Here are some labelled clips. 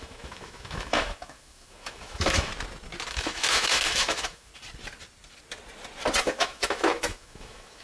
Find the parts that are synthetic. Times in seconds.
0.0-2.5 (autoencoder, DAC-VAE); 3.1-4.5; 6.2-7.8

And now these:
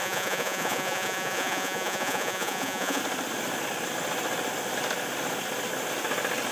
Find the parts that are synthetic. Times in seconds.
0.0-3.0 (vocoder, Vocos)

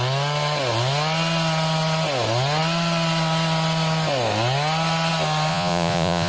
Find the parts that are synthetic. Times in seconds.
5.5-6.3 (vocoder, Vocos)

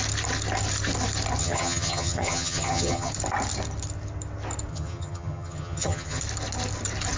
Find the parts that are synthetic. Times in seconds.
1.4-3.1 (vocoder, HiFi-GAN); 4.7-6.2

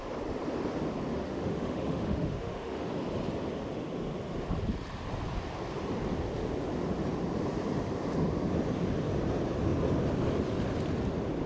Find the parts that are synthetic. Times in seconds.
1.1-2.9 (autoencoder, DAC-VAE)

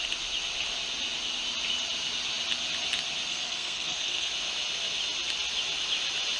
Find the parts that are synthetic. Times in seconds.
3.3-4.3 (codec, SNAC)